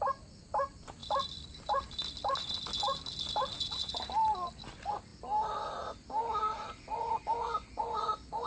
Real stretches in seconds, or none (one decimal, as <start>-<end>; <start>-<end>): 0.0-8.5